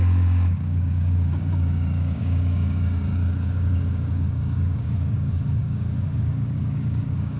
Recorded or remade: remade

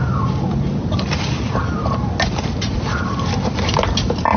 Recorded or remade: recorded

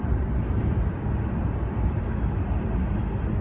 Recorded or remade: recorded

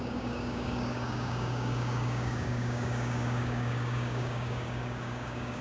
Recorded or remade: remade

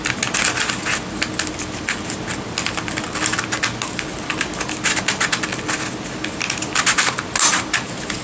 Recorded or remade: recorded